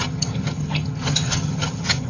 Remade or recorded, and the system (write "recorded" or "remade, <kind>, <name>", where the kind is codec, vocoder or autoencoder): remade, vocoder, HiFi-GAN